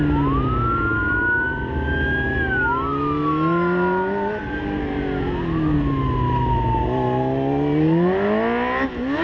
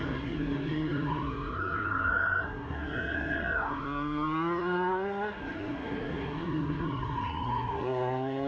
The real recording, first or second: first